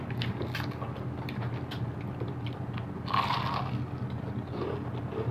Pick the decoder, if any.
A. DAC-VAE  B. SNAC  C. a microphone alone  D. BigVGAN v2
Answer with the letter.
C